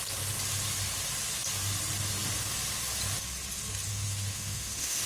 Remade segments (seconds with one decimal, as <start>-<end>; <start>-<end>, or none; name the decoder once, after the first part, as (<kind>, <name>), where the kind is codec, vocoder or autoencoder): 3.9-5.1 (autoencoder, DAC-VAE)

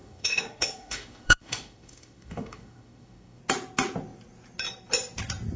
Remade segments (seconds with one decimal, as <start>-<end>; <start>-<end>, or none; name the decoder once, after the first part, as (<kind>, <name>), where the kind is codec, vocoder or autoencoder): 0.0-3.4 (autoencoder, DAC-VAE)

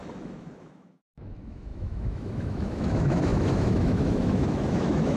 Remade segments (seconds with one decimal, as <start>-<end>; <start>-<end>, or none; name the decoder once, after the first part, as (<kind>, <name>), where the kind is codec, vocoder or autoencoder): 0.0-5.2 (autoencoder, DAC-VAE)